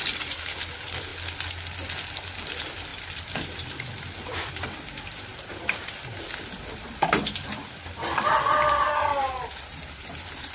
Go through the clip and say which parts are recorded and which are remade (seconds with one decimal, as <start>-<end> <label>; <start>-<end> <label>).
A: 0.0-1.1 remade; 1.1-2.1 recorded; 2.1-10.5 remade